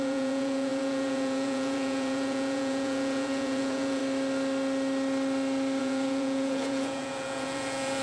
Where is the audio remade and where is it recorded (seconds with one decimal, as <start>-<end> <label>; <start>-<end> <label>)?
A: 0.0-4.0 remade; 4.0-5.8 recorded; 5.8-8.0 remade